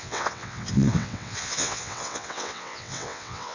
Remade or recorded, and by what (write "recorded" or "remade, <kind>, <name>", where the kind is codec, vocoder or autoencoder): remade, vocoder, WaveNeXt